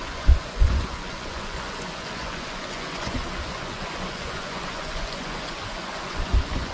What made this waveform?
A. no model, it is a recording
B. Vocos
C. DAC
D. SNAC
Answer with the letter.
B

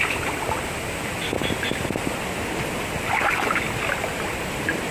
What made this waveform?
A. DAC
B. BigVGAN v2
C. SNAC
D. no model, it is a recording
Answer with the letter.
D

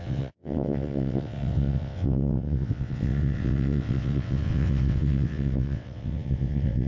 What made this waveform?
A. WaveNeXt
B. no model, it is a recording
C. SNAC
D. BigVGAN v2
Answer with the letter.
A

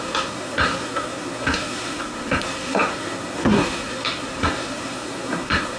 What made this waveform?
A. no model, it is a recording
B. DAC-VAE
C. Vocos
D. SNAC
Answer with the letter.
D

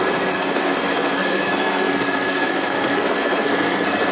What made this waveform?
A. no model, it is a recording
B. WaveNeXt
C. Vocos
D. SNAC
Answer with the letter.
D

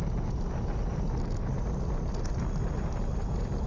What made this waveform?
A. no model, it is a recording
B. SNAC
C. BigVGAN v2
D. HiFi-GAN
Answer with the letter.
A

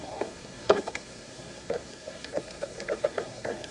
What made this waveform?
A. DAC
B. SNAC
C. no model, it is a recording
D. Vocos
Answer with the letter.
B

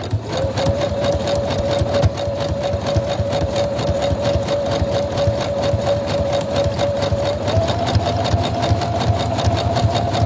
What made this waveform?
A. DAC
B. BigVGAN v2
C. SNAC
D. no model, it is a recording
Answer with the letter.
D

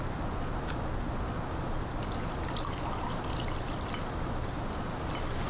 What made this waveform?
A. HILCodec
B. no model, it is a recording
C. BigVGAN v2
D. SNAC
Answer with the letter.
B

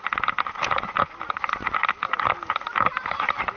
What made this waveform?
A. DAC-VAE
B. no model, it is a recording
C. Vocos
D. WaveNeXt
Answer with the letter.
B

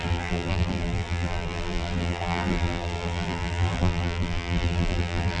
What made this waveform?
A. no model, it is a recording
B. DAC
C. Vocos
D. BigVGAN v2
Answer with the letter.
D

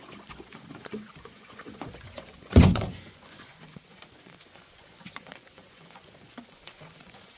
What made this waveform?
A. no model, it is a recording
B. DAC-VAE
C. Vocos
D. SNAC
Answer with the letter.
C